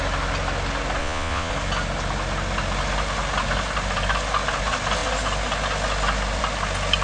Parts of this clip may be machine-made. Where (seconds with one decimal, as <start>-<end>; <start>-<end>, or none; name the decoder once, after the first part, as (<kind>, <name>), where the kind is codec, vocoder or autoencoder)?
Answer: 1.0-1.5 (vocoder, Vocos)